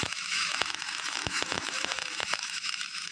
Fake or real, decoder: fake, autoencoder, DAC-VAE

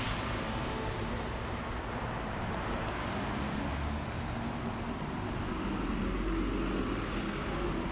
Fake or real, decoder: real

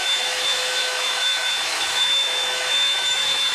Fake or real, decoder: fake, autoencoder, DAC-VAE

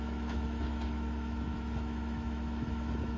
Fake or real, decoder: fake, autoencoder, DAC-VAE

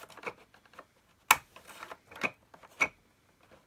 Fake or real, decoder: real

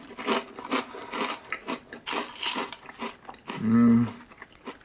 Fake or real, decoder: real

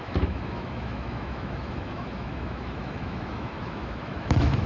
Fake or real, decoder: fake, autoencoder, DAC-VAE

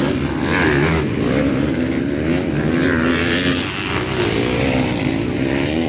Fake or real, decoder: real